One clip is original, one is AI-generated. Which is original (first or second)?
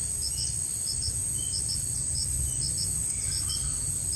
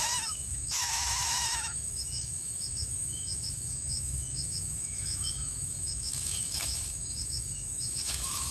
first